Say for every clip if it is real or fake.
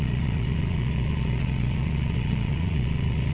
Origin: fake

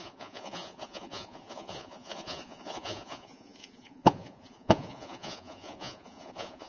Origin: fake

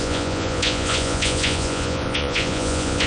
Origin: fake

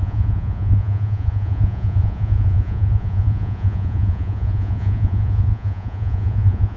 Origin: fake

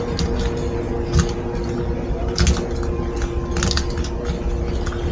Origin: real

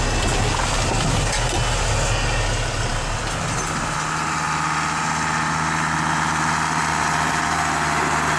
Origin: real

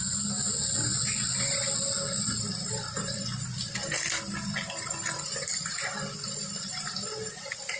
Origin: real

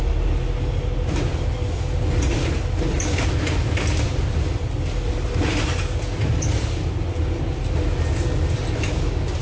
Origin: real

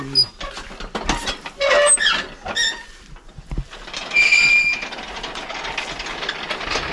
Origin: real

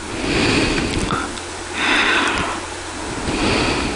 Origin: real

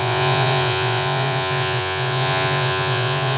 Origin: fake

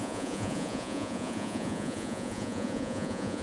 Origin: fake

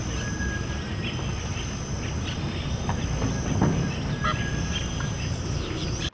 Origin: real